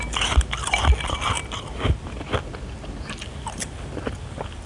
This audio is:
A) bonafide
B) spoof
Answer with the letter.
A